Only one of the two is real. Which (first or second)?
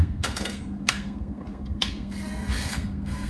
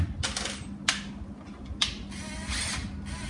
second